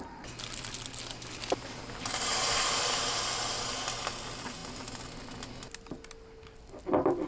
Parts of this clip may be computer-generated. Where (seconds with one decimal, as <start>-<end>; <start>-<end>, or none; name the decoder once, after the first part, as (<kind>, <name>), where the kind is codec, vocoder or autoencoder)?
none